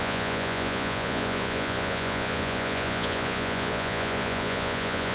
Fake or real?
fake